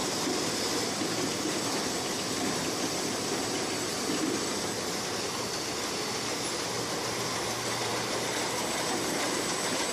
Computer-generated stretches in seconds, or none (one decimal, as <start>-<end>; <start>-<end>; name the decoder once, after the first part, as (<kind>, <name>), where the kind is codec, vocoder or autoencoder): 7.9-9.9 (vocoder, BigVGAN v2)